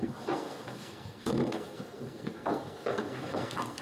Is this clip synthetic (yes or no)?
yes